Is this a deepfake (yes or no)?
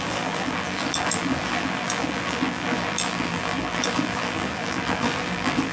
yes